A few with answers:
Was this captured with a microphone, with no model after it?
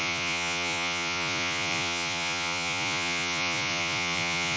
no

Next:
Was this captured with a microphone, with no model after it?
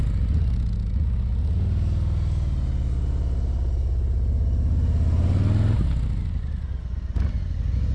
yes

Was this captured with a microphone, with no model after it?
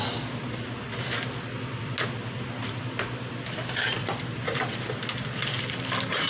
yes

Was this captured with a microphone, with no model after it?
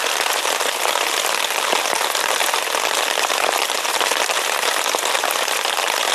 yes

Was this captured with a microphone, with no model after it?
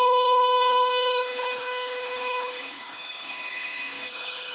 no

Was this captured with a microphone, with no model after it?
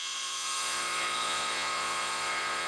no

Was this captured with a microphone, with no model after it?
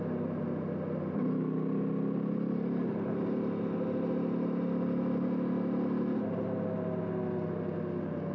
yes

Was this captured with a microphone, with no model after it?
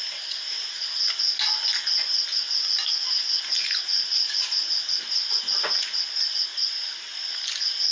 yes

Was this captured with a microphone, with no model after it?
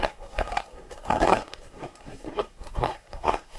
no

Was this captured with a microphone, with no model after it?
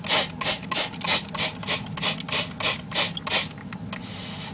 yes